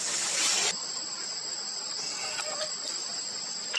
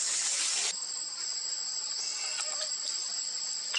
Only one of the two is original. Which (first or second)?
second